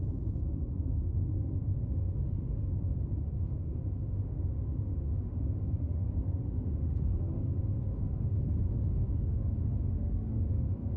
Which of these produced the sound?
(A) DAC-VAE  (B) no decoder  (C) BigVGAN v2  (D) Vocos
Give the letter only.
A